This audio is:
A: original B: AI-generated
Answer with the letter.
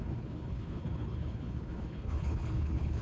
B